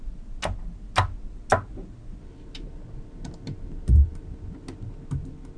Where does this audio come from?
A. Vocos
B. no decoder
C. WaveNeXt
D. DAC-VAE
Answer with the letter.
B